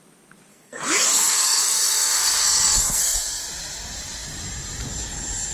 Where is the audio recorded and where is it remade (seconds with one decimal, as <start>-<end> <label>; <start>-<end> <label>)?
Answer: 0.0-0.5 recorded; 0.5-3.4 remade; 3.4-5.5 recorded